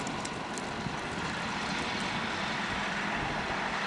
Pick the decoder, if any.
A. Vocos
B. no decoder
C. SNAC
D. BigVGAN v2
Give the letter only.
B